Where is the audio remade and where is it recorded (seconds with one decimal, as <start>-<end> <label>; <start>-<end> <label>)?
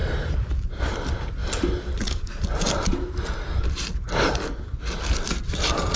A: 0.0-1.4 remade; 1.4-5.0 recorded; 5.0-6.0 remade